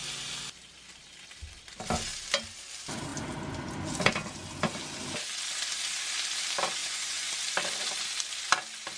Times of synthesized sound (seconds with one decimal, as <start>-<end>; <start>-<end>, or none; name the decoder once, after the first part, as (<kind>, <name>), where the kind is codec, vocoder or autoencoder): 6.8-7.3 (vocoder, Vocos)